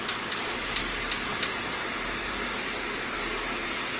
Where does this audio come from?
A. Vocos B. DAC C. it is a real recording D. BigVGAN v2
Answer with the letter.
C